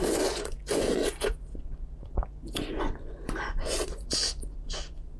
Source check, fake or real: fake